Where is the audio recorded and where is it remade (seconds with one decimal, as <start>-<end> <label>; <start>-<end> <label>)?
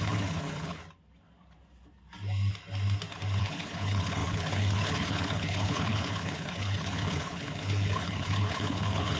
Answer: 0.0-0.8 remade; 0.8-3.4 recorded; 3.4-9.2 remade